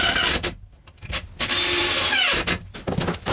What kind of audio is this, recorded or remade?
recorded